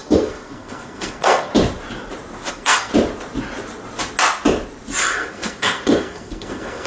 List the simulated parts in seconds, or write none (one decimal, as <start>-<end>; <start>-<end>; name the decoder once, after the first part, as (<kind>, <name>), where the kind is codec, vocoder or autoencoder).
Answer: 0.0-1.5 (codec, SNAC); 2.5-2.9; 5.0-6.9